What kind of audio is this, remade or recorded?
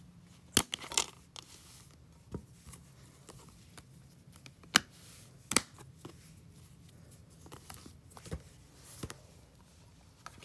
recorded